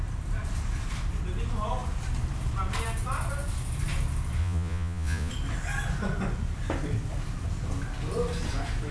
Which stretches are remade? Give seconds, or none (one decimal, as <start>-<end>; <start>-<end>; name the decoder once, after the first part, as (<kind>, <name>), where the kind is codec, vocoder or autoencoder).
4.4-5.3 (vocoder, Vocos)